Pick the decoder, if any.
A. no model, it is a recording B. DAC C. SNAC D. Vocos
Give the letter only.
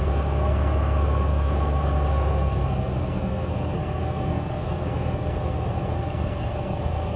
C